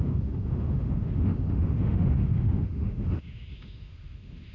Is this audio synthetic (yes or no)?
yes